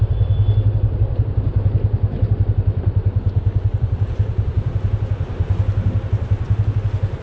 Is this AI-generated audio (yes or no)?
no